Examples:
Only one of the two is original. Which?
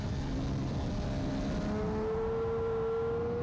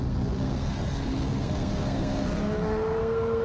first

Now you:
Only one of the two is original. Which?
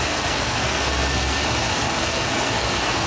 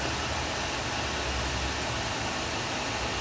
second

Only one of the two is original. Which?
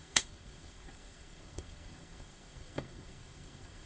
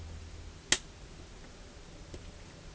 second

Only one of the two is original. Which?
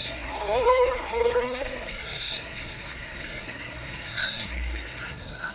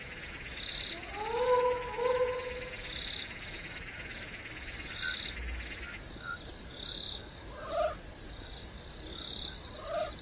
second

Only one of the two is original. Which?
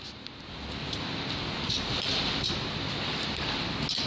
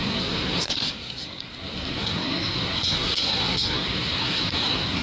first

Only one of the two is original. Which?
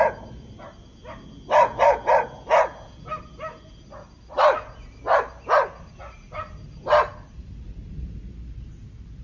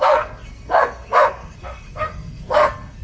first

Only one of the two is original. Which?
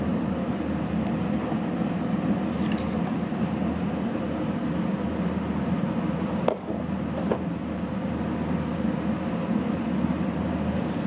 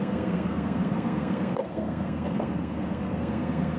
first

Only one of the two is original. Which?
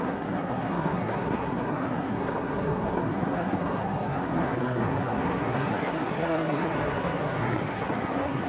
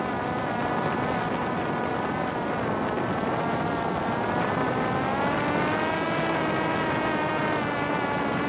second